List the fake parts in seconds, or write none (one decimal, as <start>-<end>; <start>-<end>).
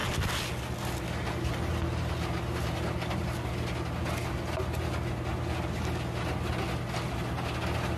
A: none